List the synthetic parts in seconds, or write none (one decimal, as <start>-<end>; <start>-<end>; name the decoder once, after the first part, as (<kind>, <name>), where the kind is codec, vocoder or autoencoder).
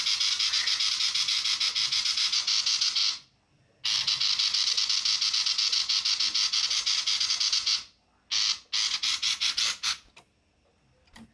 none